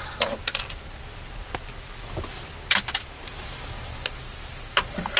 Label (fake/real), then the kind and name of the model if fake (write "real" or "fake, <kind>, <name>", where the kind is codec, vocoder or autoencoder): real